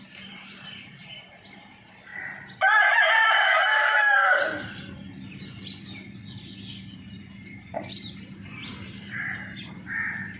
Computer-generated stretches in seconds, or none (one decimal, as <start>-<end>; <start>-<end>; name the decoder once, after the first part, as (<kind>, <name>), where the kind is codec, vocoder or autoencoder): 0.0-2.1 (vocoder, BigVGAN v2); 7.0-10.4